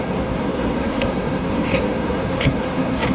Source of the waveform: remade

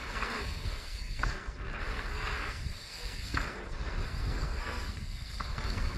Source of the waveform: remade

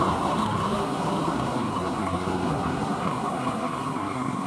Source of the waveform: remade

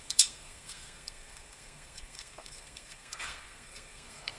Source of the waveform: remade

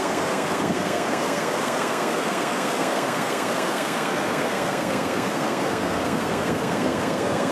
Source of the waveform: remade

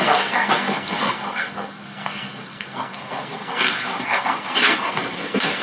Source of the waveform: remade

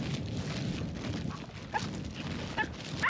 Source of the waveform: recorded